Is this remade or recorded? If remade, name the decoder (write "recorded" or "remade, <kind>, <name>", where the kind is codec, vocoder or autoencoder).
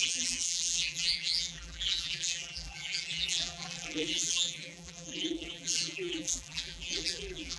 remade, vocoder, BigVGAN v2